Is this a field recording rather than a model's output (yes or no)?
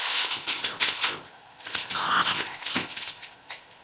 no